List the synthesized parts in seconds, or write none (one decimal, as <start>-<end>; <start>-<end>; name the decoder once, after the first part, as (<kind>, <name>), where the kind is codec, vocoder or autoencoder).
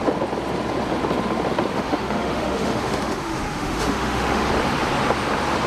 1.7-4.5 (autoencoder, DAC-VAE)